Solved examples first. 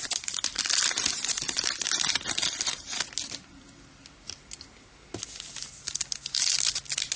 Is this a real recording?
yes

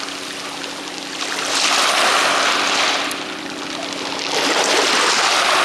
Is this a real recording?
yes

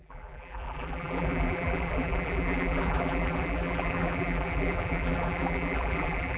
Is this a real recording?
no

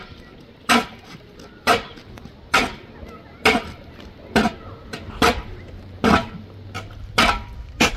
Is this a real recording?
yes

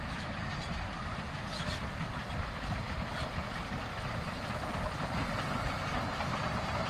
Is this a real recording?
no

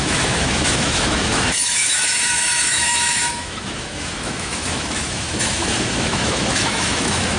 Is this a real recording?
no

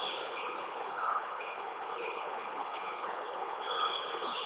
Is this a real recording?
no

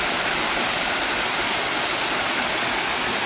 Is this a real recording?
yes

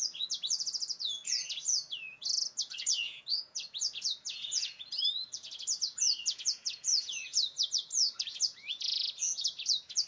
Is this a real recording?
no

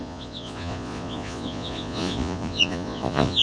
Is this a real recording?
no